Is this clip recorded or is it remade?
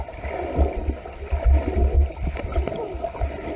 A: recorded